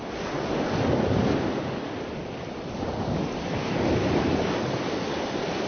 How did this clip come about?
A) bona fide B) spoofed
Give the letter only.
A